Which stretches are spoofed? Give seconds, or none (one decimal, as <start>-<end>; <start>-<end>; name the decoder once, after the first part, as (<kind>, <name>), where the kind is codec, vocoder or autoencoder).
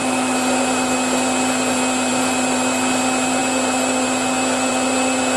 none